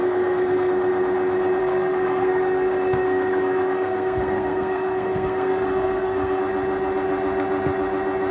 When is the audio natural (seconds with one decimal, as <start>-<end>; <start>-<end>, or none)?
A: 0.7-1.6; 6.4-8.3